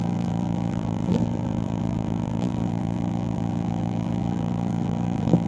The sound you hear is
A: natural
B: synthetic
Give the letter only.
B